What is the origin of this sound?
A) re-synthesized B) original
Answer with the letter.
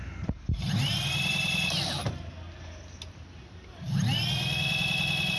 B